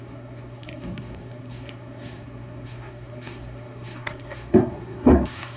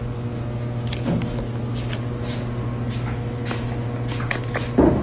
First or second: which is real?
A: second